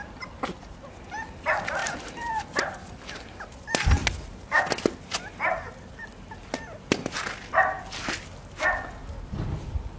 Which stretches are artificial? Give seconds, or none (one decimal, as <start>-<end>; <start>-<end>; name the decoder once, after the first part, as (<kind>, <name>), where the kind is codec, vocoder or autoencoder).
none